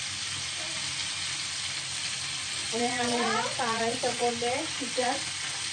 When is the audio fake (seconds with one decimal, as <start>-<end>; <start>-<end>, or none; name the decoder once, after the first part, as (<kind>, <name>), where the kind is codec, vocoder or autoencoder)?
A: 2.6-4.3 (vocoder, Vocos)